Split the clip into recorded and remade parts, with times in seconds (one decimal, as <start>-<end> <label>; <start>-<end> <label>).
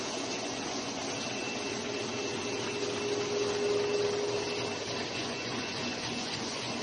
0.0-1.0 remade; 1.0-5.1 recorded; 5.1-6.8 remade